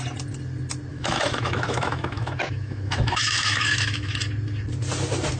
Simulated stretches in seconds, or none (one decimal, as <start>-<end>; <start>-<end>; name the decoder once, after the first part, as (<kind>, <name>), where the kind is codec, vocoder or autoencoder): 0.9-4.1 (autoencoder, DAC-VAE)